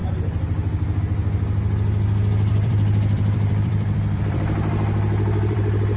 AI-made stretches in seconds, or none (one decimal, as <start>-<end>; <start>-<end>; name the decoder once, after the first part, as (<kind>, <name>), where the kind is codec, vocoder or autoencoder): 2.5-5.6 (vocoder, BigVGAN v2)